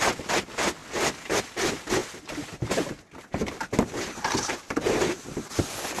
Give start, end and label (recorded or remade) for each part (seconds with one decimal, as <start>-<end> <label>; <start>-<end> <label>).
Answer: 0.0-6.0 recorded